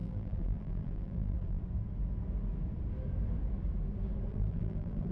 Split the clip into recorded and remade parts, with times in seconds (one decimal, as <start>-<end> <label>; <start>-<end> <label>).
0.0-1.6 remade; 1.6-4.3 recorded; 4.3-5.1 remade